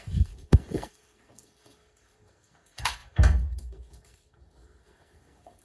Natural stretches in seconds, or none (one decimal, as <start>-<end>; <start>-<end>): none